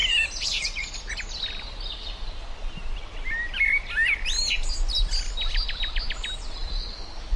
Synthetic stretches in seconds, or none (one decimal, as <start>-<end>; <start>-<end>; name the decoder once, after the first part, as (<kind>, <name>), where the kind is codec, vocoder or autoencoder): 0.0-1.0 (vocoder, BigVGAN v2)